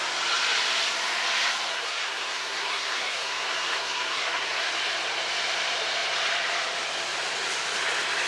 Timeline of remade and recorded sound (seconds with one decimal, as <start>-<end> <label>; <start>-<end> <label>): 0.0-1.7 recorded; 1.7-4.7 remade; 4.7-8.3 recorded